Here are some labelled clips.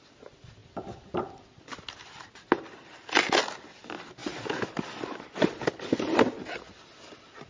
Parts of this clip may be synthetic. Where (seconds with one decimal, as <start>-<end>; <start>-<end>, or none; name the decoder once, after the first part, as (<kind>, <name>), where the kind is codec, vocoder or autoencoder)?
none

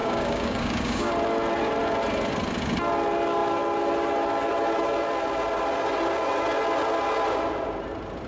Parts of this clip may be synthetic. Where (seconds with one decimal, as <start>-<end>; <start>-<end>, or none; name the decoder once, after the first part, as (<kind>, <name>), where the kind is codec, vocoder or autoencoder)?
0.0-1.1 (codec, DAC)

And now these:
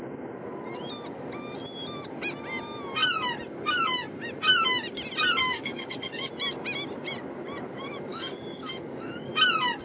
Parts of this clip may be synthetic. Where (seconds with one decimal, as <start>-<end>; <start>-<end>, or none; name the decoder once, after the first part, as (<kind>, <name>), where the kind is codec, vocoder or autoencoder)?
5.4-6.3 (codec, DAC); 8.1-9.3

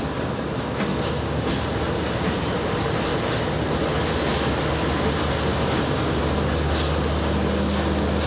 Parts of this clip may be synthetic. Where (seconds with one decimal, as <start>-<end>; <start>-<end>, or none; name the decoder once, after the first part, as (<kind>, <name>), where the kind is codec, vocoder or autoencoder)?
0.9-1.5 (codec, DAC); 5.5-6.2

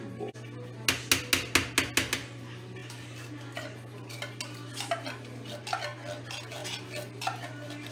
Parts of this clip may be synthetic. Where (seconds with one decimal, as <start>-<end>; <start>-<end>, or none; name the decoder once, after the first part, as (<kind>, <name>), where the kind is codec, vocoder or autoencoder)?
none

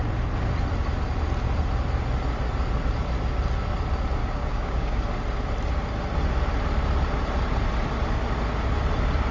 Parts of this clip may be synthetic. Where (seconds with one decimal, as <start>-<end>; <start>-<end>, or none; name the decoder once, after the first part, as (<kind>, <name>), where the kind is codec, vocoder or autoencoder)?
4.2-5.0 (codec, DAC)

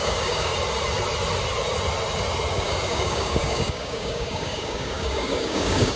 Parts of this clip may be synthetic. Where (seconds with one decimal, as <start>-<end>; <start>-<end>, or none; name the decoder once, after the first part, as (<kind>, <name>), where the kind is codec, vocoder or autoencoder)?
0.0-0.5 (codec, DAC); 2.5-6.0